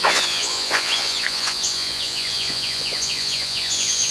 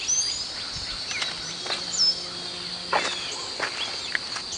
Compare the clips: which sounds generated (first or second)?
first